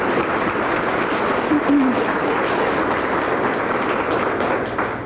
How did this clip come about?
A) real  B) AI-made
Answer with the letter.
A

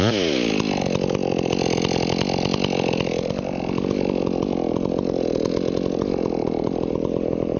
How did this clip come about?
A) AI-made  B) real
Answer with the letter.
B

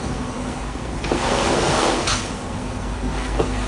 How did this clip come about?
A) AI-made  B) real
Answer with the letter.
A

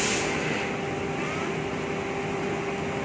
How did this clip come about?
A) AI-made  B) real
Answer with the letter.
B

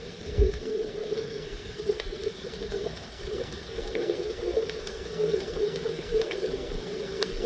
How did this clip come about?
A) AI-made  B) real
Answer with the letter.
A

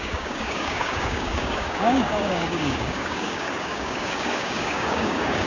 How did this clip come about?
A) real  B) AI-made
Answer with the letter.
B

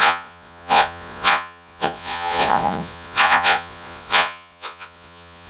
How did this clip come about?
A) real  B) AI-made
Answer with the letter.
B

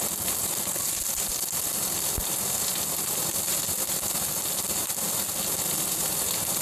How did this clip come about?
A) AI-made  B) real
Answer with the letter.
B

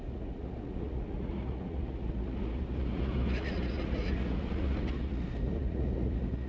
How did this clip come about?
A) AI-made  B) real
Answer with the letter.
A